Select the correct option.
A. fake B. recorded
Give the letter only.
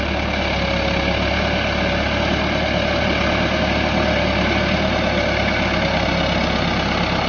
B